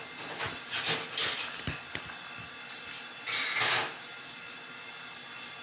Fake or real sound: real